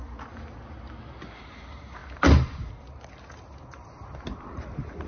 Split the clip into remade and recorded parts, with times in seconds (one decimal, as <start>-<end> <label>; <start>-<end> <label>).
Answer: 0.0-5.1 recorded